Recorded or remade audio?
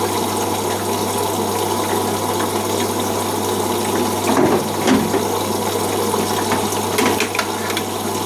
recorded